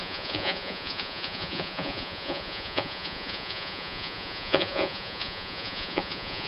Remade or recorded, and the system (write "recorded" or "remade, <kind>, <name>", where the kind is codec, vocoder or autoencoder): remade, vocoder, Vocos